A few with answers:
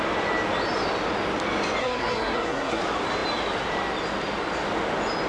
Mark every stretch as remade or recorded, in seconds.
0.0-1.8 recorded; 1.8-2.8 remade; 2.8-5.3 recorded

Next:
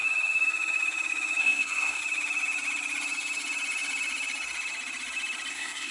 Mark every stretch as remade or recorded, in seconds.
0.0-1.4 recorded; 1.4-2.0 remade; 2.0-5.5 recorded; 5.5-5.9 remade

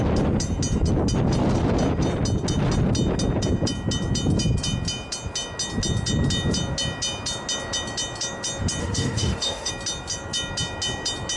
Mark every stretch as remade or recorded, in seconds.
0.0-8.8 recorded; 8.8-9.7 remade; 9.7-11.4 recorded

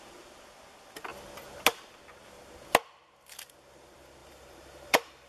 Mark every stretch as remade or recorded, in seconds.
0.0-4.2 recorded; 4.2-5.3 remade

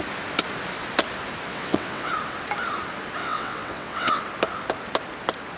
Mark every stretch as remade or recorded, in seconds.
0.0-1.5 recorded; 1.5-2.1 remade; 2.1-3.2 recorded; 3.2-4.2 remade; 4.2-5.6 recorded

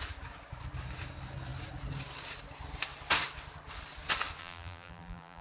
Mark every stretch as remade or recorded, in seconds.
0.0-4.4 recorded; 4.4-5.4 remade

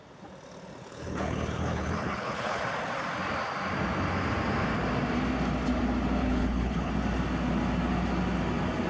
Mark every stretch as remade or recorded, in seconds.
0.0-0.8 recorded; 0.8-2.6 remade; 2.6-6.2 recorded; 6.2-6.9 remade; 6.9-8.9 recorded